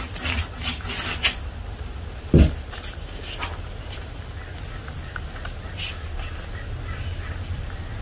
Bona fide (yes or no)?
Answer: yes